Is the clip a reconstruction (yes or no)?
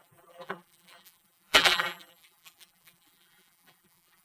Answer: yes